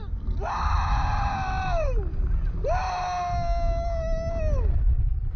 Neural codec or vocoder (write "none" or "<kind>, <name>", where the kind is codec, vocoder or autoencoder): none